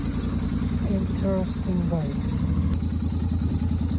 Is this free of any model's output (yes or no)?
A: yes